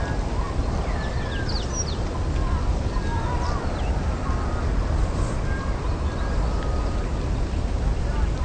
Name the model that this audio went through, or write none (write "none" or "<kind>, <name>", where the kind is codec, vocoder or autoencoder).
none